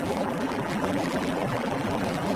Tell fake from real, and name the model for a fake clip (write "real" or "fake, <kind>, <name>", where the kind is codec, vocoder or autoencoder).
fake, vocoder, BigVGAN v2